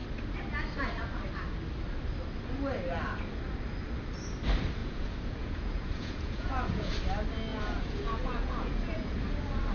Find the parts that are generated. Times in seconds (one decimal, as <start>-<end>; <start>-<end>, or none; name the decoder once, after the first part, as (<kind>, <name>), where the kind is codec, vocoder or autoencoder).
4.8-6.9 (vocoder, Vocos); 7.5-9.2